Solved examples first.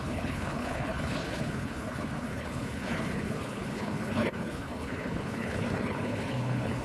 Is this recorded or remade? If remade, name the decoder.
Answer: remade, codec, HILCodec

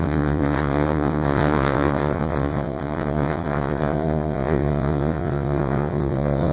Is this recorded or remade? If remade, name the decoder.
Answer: remade, vocoder, WaveNeXt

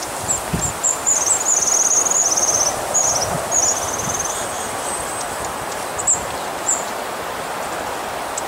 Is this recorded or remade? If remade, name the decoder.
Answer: recorded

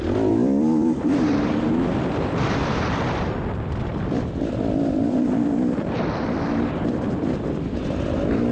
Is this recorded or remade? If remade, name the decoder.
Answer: remade, vocoder, BigVGAN v2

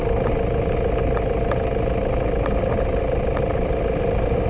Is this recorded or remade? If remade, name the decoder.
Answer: recorded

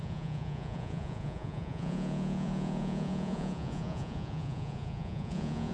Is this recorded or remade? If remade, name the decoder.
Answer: remade, vocoder, Vocos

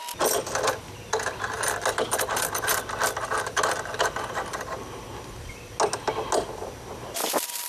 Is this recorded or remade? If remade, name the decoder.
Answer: recorded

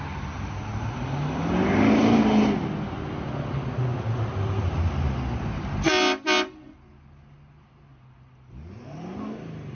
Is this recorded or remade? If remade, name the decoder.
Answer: recorded